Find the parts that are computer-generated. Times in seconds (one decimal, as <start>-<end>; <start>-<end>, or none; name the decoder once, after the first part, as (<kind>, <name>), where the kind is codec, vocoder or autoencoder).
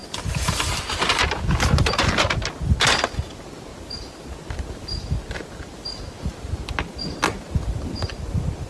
0.0-0.8 (vocoder, BigVGAN v2)